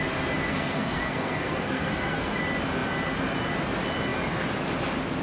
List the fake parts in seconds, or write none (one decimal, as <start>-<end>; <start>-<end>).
0.5-2.4